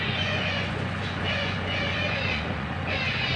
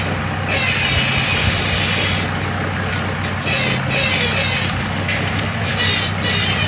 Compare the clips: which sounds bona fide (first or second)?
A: second